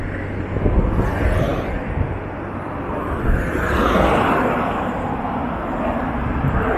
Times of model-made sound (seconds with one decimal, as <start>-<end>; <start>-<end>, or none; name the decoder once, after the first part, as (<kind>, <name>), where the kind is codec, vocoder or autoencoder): 1.5-3.8 (vocoder, BigVGAN v2)

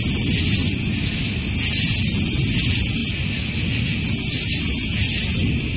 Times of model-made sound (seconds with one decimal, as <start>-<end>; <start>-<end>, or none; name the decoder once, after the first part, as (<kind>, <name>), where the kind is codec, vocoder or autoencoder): none

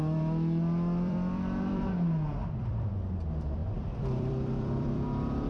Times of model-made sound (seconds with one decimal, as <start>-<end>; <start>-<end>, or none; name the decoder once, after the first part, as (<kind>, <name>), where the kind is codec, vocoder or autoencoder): 0.0-1.8 (vocoder, BigVGAN v2); 2.4-2.9; 3.6-5.5

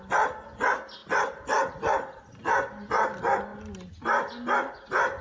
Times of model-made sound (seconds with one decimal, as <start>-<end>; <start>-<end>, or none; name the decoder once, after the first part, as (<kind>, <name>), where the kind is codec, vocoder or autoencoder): none